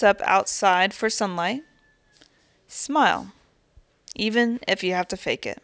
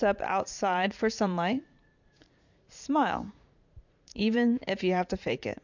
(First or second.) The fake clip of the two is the second